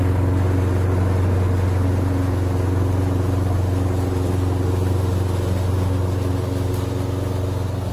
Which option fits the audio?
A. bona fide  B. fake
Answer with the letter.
A